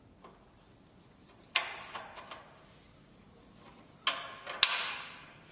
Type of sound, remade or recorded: recorded